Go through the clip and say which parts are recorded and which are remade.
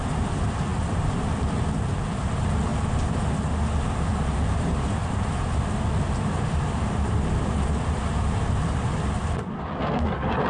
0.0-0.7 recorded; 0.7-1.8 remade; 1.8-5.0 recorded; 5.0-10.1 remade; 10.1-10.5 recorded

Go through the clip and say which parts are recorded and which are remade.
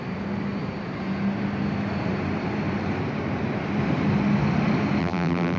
0.0-5.0 recorded; 5.0-5.6 remade